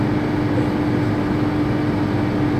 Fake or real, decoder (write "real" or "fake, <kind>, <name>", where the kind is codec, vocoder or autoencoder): real